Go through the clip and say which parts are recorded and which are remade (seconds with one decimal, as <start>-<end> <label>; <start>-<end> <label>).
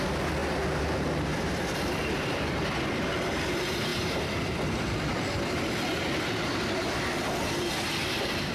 0.0-0.4 recorded; 0.4-1.6 remade; 1.6-3.9 recorded; 3.9-6.2 remade; 6.2-8.5 recorded